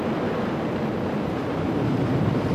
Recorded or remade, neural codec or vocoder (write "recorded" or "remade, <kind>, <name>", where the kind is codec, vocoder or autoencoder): remade, vocoder, BigVGAN v2